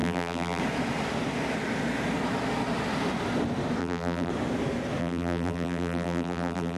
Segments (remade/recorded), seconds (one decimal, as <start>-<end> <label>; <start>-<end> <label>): 0.0-0.6 remade; 0.6-3.8 recorded; 3.8-4.3 remade; 4.3-5.0 recorded; 5.0-6.8 remade

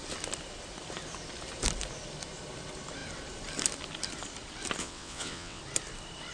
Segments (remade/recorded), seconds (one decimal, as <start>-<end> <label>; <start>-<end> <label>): 0.0-4.8 recorded; 4.8-5.6 remade; 5.6-6.3 recorded

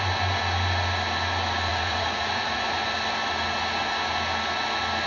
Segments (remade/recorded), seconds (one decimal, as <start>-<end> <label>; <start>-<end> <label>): 0.0-1.7 recorded; 1.7-2.6 remade; 2.6-5.1 recorded

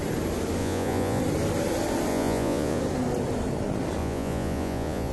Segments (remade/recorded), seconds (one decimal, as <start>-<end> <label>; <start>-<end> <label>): 0.0-0.6 recorded; 0.6-1.2 remade; 1.2-2.1 recorded; 2.1-2.8 remade; 2.8-4.0 recorded; 4.0-5.1 remade